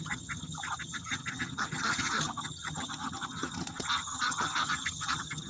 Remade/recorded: remade